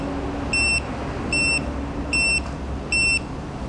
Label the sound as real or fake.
real